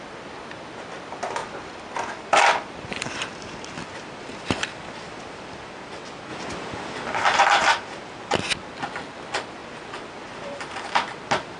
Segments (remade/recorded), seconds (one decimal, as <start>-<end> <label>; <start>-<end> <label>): 0.0-1.4 recorded; 1.4-5.7 remade; 5.7-9.6 recorded; 9.6-10.9 remade; 10.9-11.6 recorded